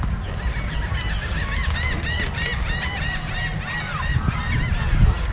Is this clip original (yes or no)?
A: yes